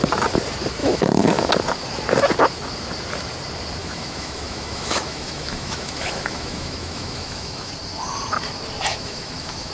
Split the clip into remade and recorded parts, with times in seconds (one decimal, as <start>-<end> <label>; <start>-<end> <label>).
0.0-0.8 recorded; 0.8-1.5 remade; 1.5-3.8 recorded; 3.8-7.7 remade; 7.7-8.9 recorded; 8.9-9.7 remade